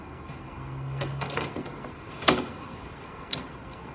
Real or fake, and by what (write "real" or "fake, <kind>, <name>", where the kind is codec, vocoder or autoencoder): fake, codec, SNAC